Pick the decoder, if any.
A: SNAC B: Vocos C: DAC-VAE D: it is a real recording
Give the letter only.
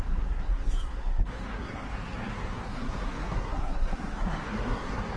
A